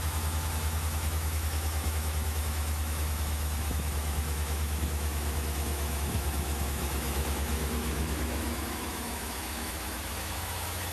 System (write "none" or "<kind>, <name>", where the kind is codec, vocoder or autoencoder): autoencoder, DAC-VAE